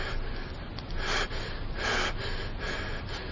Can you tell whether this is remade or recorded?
recorded